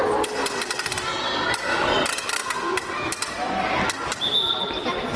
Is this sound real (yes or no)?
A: yes